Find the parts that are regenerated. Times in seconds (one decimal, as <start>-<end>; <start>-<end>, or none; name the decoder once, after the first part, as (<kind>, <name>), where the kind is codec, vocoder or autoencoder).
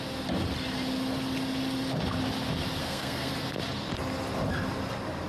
2.8-3.3 (codec, SNAC)